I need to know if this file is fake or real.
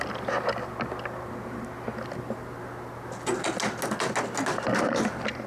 real